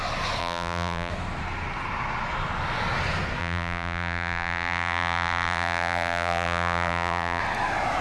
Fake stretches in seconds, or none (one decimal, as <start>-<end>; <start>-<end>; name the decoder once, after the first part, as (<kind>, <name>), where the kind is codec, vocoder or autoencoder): 0.4-1.1 (vocoder, BigVGAN v2); 3.4-7.4

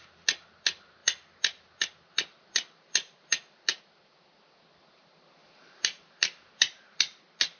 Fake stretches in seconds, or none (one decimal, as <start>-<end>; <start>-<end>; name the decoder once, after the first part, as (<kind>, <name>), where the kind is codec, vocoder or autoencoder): 5.4-7.0 (vocoder, BigVGAN v2)

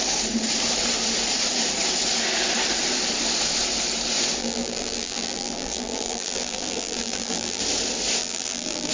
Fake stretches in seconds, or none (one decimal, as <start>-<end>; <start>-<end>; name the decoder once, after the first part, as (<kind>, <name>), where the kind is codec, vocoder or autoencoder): 4.4-7.6 (vocoder, BigVGAN v2); 8.2-8.9

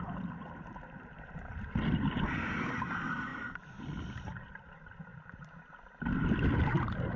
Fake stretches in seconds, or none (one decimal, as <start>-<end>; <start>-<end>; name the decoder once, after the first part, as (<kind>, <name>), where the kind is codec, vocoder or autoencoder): 0.4-1.7 (vocoder, BigVGAN v2); 3.3-3.8; 5.1-5.7